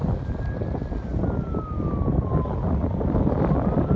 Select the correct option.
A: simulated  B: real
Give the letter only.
B